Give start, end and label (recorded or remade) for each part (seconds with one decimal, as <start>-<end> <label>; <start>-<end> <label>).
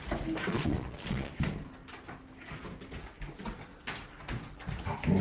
0.0-0.5 recorded; 0.5-1.3 remade; 1.3-5.2 recorded